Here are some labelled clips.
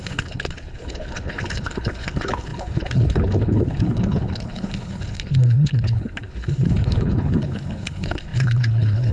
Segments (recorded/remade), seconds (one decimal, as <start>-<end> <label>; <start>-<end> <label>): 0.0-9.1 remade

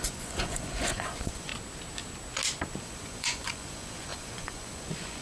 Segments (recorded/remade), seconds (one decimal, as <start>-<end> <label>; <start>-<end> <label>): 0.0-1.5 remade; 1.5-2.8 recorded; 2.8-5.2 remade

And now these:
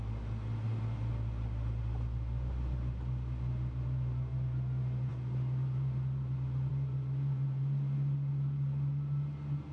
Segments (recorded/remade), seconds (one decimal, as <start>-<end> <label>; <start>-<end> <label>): 0.0-9.7 recorded

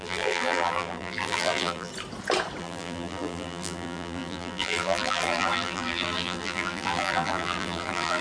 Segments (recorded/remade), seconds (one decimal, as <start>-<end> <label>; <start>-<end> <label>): 0.0-1.9 remade; 1.9-2.6 recorded; 2.6-8.2 remade

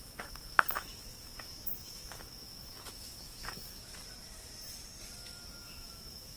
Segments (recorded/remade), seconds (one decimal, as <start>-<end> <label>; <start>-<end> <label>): 0.0-3.8 remade; 3.8-5.6 recorded; 5.6-6.4 remade